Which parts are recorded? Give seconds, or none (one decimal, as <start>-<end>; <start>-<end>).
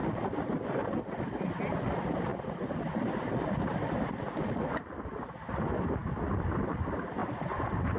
0.0-2.3; 3.2-6.0; 6.7-7.2